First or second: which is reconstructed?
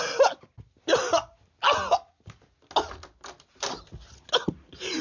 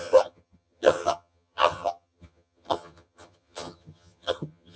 second